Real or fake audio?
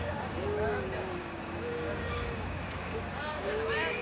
fake